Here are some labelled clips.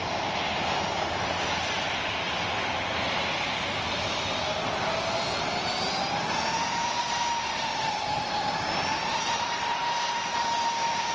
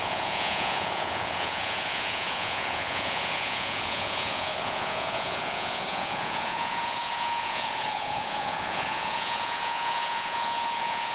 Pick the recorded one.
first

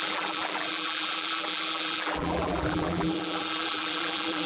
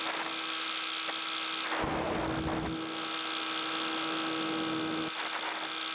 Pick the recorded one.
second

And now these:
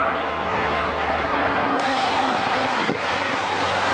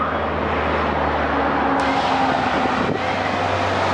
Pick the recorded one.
second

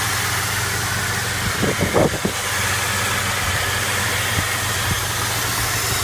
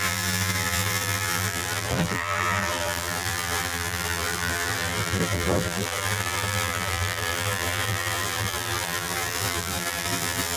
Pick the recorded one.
first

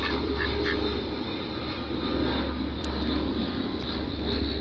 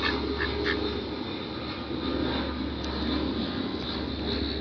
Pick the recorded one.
second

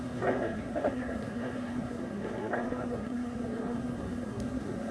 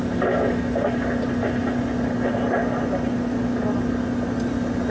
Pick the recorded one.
second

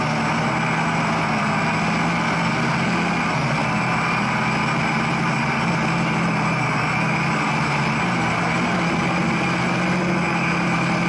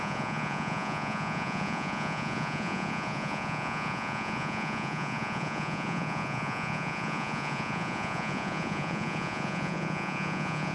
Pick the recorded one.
first